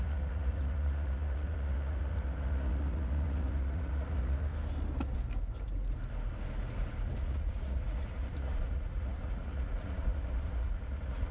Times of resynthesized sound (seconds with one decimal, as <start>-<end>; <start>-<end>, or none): 0.0-4.5; 7.2-11.3